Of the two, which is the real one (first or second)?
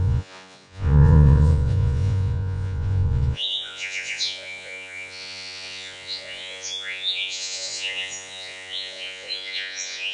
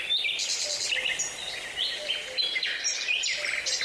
second